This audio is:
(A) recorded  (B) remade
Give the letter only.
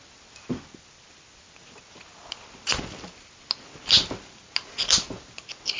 A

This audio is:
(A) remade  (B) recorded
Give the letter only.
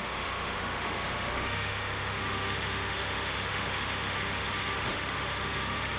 A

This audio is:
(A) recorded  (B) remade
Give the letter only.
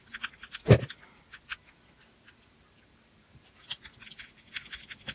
A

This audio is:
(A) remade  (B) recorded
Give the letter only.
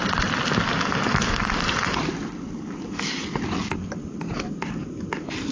B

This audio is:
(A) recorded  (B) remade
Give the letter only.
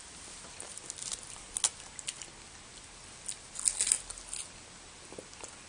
A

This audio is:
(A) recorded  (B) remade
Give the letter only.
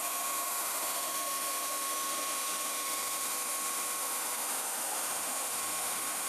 B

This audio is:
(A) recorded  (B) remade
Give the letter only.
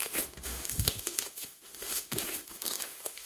B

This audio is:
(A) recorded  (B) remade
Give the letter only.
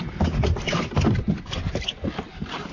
A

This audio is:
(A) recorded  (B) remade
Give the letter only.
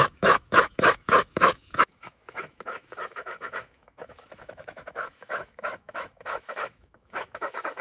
B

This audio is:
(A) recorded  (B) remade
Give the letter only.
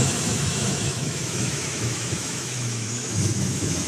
B